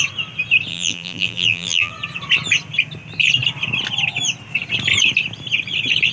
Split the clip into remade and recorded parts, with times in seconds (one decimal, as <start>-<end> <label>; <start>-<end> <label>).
0.0-0.7 recorded; 0.7-1.9 remade; 1.9-6.1 recorded

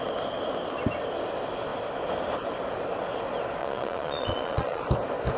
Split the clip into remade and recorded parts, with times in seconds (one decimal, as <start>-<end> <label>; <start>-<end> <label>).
0.0-3.6 recorded; 3.6-4.8 remade; 4.8-5.4 recorded

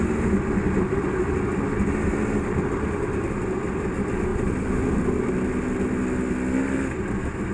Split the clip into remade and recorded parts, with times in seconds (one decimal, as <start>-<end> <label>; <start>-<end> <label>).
0.0-1.5 recorded; 1.5-2.1 remade; 2.1-4.3 recorded; 4.3-5.3 remade; 5.3-7.5 recorded